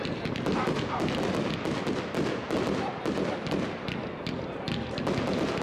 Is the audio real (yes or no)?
yes